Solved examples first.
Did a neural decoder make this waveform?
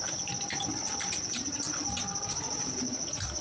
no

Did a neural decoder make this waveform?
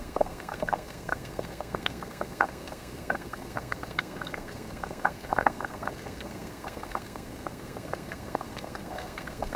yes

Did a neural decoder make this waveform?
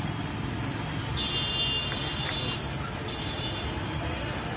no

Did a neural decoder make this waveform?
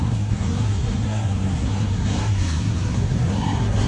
yes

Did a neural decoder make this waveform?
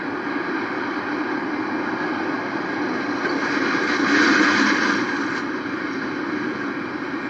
no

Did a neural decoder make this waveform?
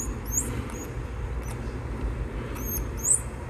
no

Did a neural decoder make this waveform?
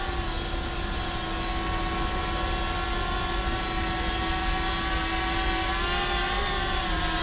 no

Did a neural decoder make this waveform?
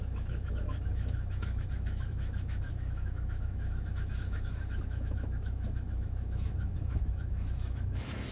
yes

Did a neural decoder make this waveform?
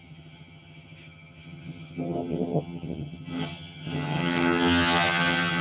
yes